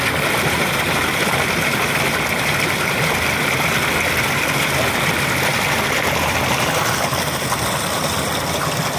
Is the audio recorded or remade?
recorded